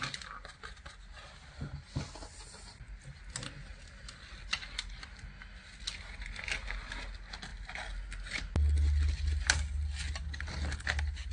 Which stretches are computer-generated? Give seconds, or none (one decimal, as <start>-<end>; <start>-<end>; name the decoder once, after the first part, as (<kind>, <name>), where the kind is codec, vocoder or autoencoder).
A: none